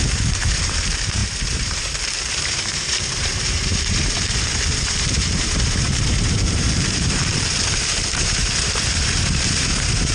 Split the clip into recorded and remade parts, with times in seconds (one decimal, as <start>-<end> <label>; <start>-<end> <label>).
0.0-10.1 remade